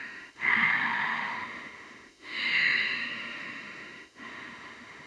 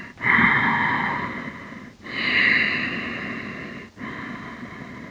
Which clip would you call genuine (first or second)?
second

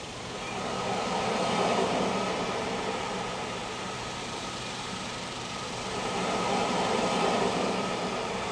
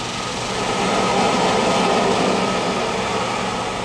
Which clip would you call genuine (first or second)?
second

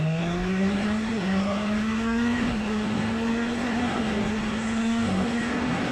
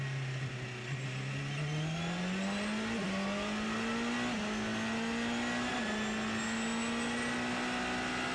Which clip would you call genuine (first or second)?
second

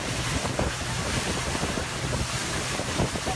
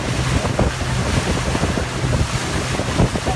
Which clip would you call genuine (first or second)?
second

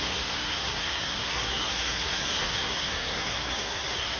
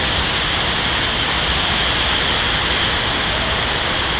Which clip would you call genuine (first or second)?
second